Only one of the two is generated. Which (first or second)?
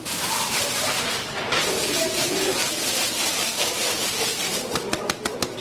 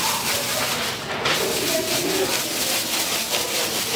first